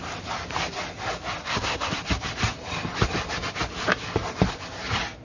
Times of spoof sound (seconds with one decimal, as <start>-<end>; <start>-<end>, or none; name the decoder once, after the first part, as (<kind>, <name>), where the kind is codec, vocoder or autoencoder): 1.4-1.9 (codec, SNAC)